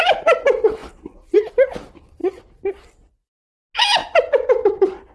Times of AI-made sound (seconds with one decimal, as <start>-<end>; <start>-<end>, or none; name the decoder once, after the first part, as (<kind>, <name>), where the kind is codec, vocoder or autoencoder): 0.8-1.5 (vocoder, BigVGAN v2); 2.2-3.3